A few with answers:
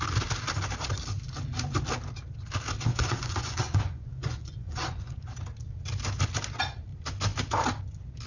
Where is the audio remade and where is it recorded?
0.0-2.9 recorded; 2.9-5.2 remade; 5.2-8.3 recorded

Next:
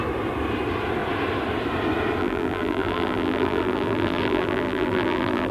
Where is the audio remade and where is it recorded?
0.0-2.2 recorded; 2.2-5.5 remade

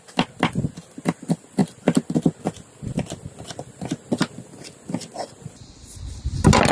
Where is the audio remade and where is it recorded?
0.0-6.7 recorded

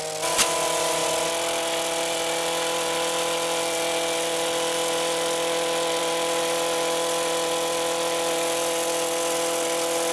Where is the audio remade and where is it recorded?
0.0-10.1 recorded

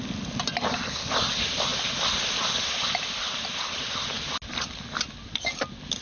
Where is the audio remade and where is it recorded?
0.0-6.0 recorded

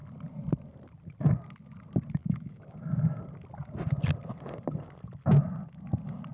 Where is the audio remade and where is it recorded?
0.0-2.2 recorded; 2.2-3.2 remade; 3.2-6.3 recorded

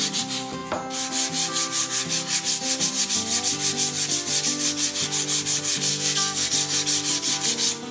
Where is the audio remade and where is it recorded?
0.0-5.9 recorded; 5.9-6.5 remade; 6.5-7.9 recorded

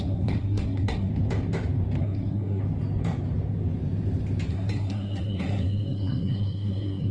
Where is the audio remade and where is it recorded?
0.0-1.1 remade; 1.1-2.0 recorded; 2.0-2.6 remade; 2.6-4.5 recorded; 4.5-7.1 remade